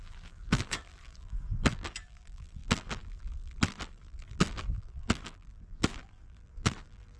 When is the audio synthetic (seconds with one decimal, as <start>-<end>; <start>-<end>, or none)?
0.0-7.2